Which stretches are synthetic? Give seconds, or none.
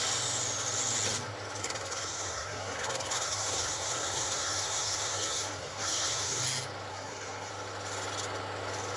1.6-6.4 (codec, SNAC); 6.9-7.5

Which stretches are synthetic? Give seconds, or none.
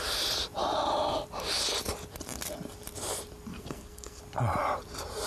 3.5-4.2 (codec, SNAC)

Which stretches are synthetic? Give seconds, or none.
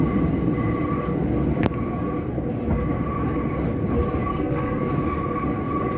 4.3-4.9 (codec, SNAC)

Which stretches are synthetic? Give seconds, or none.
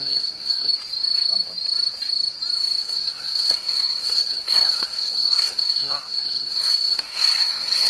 0.0-0.7 (codec, SNAC); 2.8-7.9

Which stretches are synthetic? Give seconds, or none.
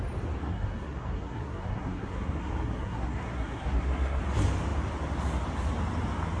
0.4-4.2 (codec, SNAC)